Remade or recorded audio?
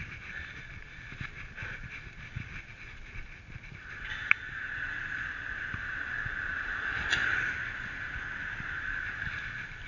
recorded